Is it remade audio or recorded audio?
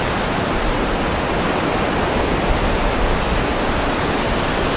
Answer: recorded